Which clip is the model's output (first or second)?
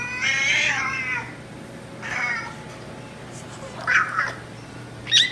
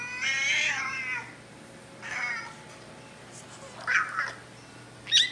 first